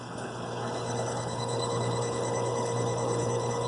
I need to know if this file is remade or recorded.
remade